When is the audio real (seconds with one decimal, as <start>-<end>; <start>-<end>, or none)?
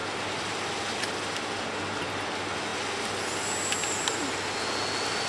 0.0-5.3